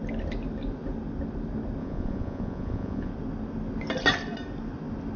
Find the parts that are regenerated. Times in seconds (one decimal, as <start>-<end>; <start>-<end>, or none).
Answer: 1.8-3.1

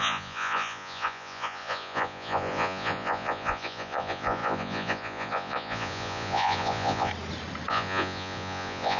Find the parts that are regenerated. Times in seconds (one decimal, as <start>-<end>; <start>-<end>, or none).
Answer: 0.0-7.1; 7.7-9.0

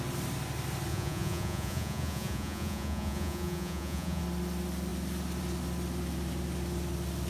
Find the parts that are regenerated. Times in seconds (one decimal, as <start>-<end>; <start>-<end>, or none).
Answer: 0.9-4.2

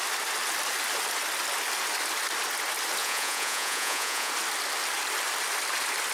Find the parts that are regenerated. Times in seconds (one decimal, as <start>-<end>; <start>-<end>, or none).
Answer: 3.0-4.3

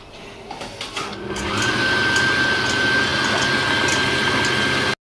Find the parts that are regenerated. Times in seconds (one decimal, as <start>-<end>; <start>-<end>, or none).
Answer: none

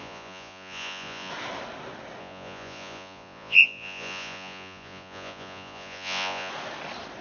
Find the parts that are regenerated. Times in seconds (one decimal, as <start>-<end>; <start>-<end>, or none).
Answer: 0.0-1.3; 2.2-6.5